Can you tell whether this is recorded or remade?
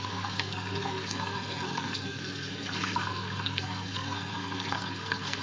remade